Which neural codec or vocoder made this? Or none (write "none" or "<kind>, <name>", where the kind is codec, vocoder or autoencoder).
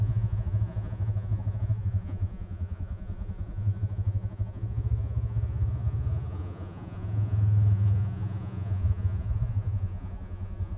vocoder, Vocos